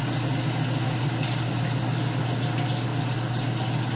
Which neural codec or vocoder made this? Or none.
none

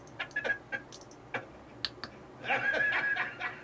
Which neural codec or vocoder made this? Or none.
none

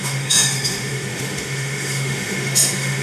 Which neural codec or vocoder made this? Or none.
autoencoder, DAC-VAE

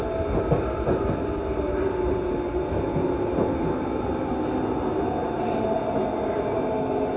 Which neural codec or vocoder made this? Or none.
none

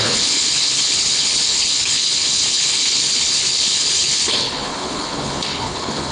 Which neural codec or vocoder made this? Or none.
codec, HILCodec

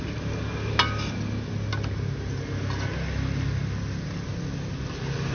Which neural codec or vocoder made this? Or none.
none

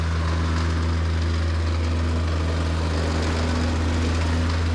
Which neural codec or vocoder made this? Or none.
none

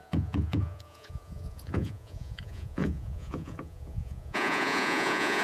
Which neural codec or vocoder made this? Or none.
vocoder, Vocos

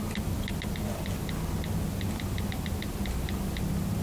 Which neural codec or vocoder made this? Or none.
none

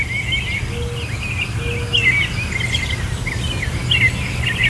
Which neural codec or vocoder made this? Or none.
none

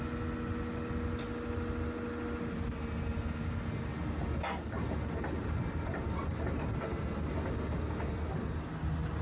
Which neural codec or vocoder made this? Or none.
none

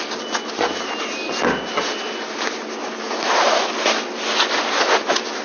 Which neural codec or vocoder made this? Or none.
none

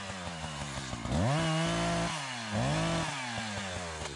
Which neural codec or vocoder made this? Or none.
none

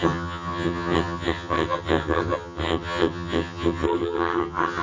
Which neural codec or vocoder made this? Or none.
vocoder, HiFi-GAN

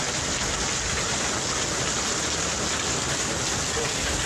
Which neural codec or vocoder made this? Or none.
none